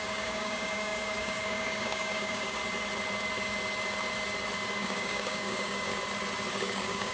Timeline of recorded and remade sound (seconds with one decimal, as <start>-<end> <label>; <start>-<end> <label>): 0.0-2.6 remade; 2.6-4.7 recorded; 4.7-5.9 remade; 5.9-6.5 recorded; 6.5-7.1 remade